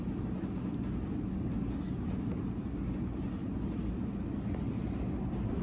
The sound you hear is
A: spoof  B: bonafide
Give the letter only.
B